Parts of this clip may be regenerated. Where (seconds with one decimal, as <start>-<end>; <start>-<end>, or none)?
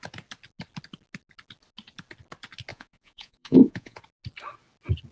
2.7-4.0